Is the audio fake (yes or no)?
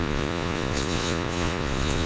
yes